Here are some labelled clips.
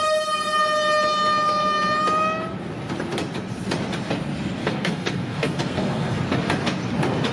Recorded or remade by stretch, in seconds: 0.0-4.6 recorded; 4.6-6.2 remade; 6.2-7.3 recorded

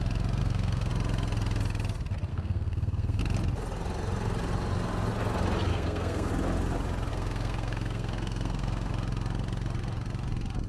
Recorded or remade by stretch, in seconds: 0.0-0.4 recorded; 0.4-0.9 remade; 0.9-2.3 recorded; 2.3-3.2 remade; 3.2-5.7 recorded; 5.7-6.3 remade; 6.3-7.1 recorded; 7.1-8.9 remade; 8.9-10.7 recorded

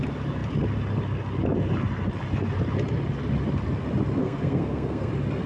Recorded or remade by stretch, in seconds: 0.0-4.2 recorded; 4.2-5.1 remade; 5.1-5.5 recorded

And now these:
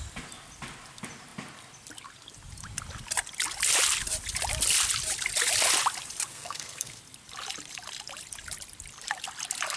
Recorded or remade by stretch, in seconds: 0.0-6.3 recorded; 6.3-7.0 remade; 7.0-9.8 recorded

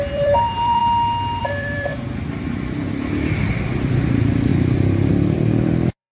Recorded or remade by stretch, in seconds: 0.0-0.8 remade; 0.8-1.4 recorded; 1.4-1.9 remade; 1.9-3.5 recorded; 3.5-4.5 remade; 4.5-5.1 recorded; 5.1-6.1 remade

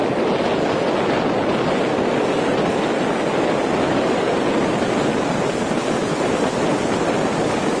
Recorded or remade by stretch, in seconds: 0.0-7.8 recorded

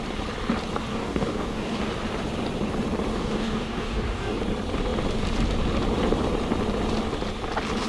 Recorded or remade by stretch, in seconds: 0.0-0.9 recorded; 0.9-1.8 remade; 1.8-3.1 recorded; 3.1-4.4 remade; 4.4-7.9 recorded